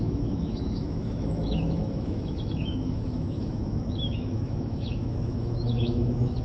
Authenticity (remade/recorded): remade